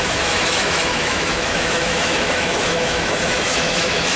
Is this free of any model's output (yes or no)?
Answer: no